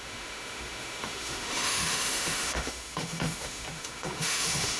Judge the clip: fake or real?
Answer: fake